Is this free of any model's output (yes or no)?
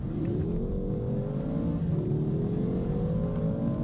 yes